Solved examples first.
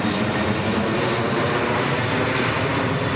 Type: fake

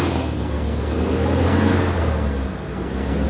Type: fake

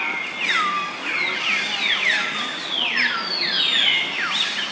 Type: real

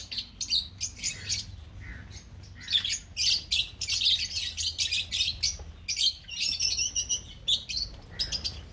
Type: real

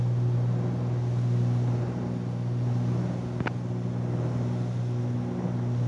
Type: real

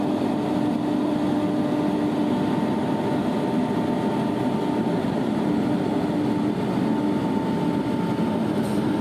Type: real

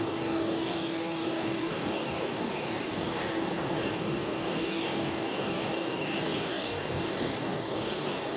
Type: fake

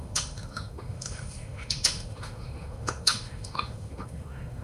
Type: fake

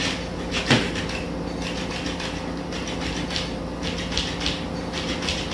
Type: real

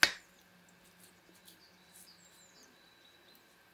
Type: real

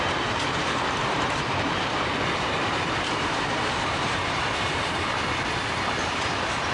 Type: fake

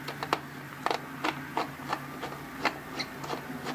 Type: real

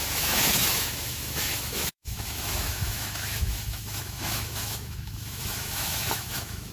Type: fake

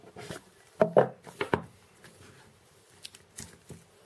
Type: real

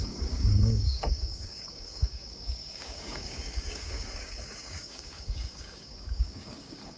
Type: fake